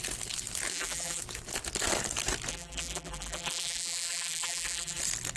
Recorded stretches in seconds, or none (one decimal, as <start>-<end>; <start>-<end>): 0.0-0.7; 1.2-2.5; 5.0-5.4